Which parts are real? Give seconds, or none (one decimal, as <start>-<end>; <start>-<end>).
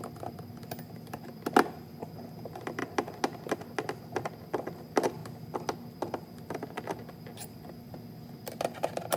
0.0-9.2